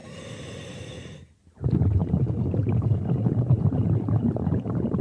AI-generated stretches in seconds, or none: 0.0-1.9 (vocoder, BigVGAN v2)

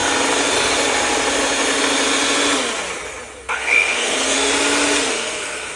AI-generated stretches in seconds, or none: 3.5-4.5 (codec, SNAC); 5.1-5.8

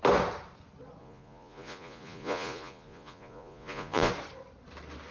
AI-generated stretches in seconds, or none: 1.0-4.1 (vocoder, Vocos)